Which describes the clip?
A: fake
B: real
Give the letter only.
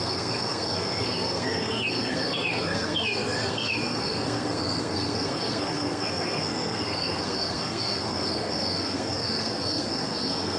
A